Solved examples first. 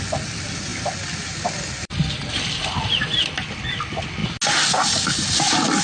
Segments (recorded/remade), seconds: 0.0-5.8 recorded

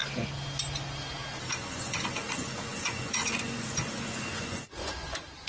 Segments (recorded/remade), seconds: 0.0-1.6 recorded; 1.6-5.5 remade

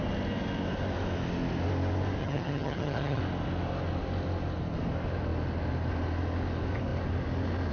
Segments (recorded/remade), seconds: 0.0-2.2 recorded; 2.2-3.2 remade; 3.2-7.7 recorded

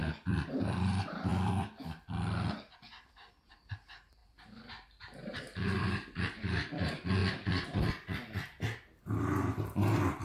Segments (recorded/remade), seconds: 0.0-0.5 recorded; 0.5-1.3 remade; 1.3-3.5 recorded; 3.5-7.2 remade; 7.2-9.0 recorded; 9.0-10.2 remade

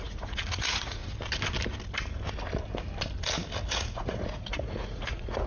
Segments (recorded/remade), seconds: 0.0-1.0 remade; 1.0-3.7 recorded; 3.7-5.5 remade

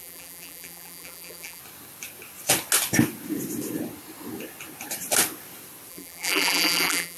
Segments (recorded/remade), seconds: 0.0-1.6 remade; 1.6-5.9 recorded; 5.9-7.2 remade